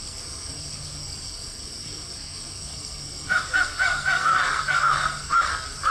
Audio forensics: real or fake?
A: fake